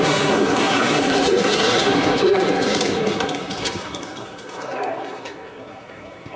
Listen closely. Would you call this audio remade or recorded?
remade